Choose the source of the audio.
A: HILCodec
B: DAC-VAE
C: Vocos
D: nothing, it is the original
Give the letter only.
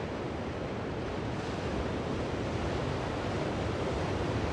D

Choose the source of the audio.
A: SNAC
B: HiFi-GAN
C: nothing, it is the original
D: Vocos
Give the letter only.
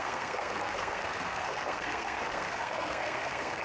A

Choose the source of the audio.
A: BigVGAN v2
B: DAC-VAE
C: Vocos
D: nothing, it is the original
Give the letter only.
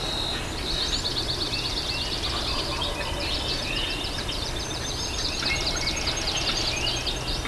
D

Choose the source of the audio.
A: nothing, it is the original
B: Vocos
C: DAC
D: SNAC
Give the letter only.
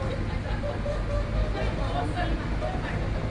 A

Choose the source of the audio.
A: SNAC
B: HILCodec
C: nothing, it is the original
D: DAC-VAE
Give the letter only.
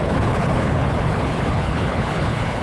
B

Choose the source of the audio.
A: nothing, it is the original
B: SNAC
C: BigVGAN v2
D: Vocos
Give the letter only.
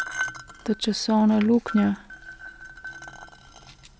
A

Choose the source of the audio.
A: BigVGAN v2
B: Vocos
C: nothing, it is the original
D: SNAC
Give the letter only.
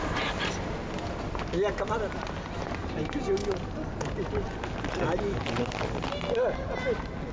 C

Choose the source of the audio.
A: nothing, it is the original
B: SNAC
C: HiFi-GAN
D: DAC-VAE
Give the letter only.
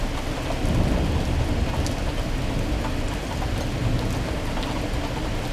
A